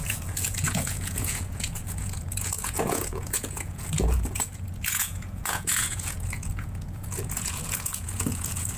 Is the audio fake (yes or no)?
yes